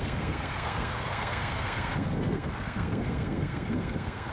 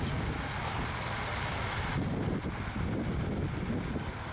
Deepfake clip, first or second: first